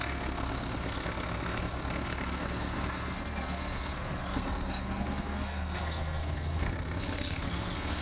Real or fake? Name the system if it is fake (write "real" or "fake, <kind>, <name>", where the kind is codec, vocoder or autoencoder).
fake, codec, SNAC